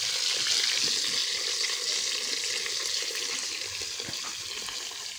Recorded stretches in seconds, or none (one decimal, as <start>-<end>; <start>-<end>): 0.0-5.2